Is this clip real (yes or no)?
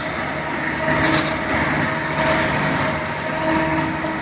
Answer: yes